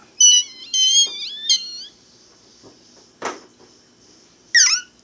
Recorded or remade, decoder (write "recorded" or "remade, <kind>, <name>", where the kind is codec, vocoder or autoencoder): recorded